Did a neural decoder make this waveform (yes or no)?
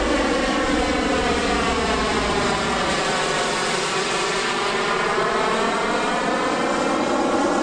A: no